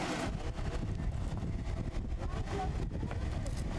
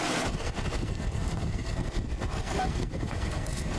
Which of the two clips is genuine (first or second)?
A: first